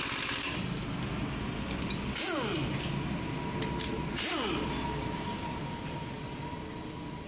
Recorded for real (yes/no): yes